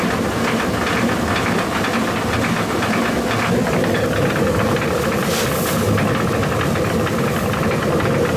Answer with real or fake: real